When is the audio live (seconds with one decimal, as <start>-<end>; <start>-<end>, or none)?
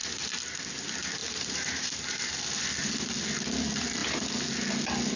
0.0-1.2; 2.4-5.2